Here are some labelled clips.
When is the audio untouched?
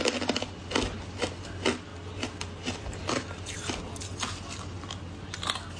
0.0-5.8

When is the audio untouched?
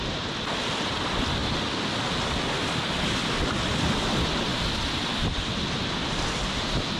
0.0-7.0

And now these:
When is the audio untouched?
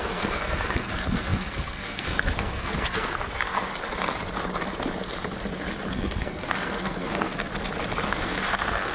3.7-5.9; 7.5-8.1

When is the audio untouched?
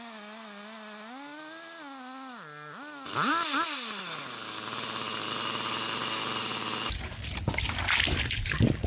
0.0-8.9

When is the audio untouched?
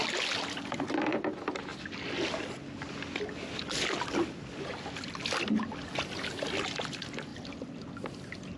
0.0-8.6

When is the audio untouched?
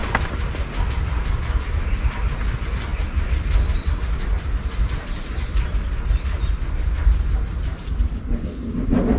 0.0-9.2